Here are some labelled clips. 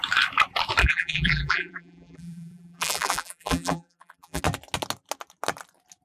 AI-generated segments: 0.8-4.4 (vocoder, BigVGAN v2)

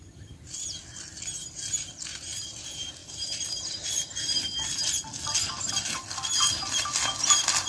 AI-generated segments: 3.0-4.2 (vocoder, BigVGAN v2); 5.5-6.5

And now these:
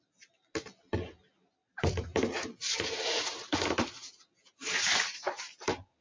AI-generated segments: 1.6-2.2 (vocoder, BigVGAN v2); 2.6-5.4

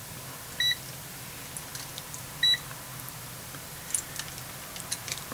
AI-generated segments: none

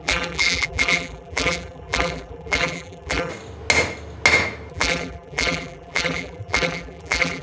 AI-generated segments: 0.0-3.3 (vocoder, BigVGAN v2); 4.7-7.4

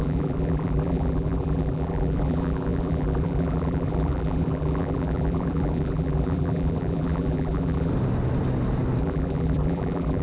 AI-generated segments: 0.0-7.9 (vocoder, BigVGAN v2); 9.0-10.2